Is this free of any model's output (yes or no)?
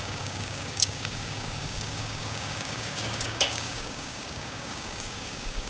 no